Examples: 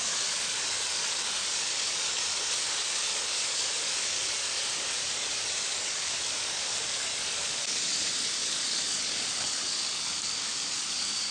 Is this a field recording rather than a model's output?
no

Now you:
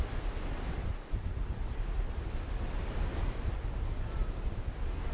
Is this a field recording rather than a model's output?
yes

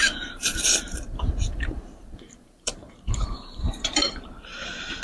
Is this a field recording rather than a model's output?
no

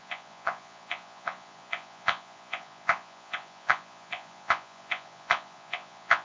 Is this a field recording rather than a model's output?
no